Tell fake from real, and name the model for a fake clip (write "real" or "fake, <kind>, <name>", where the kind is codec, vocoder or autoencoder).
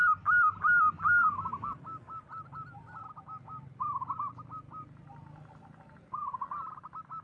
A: real